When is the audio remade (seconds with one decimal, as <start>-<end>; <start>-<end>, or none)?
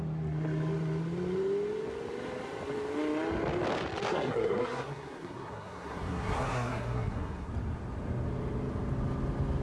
4.1-7.5